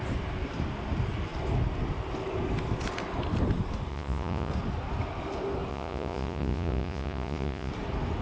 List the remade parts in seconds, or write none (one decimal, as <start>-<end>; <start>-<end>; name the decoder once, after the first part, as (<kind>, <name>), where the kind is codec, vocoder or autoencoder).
3.9-4.5 (vocoder, Vocos); 5.7-7.7